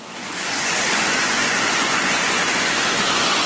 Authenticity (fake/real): fake